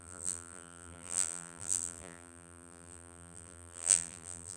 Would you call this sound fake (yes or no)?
yes